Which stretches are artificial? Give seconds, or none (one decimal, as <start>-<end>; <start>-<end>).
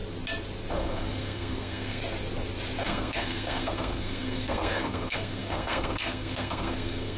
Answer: 0.7-2.0; 2.8-7.2